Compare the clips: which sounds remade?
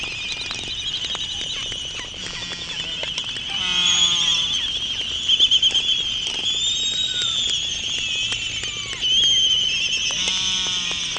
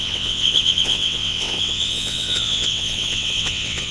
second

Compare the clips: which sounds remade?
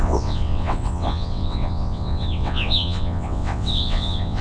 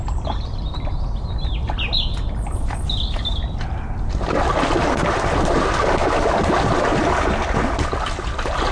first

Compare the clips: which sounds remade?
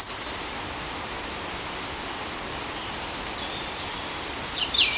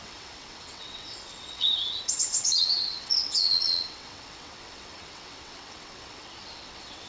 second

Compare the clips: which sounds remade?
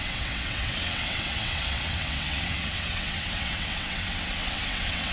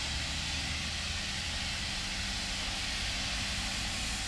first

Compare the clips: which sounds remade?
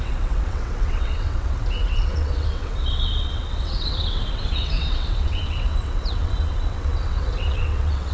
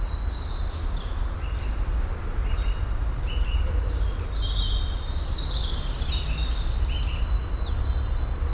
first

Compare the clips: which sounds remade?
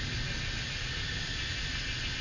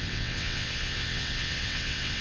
second